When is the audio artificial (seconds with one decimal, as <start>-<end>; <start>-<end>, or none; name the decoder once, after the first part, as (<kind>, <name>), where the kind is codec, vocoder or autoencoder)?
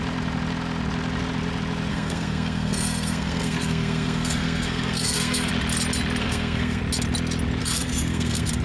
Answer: 1.9-5.5 (codec, SNAC); 6.2-6.8; 7.6-8.6